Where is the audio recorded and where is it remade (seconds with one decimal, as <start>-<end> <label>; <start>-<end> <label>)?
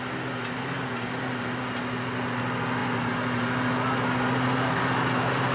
0.0-5.5 recorded